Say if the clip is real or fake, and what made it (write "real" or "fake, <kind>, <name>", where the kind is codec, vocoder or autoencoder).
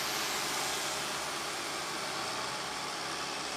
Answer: real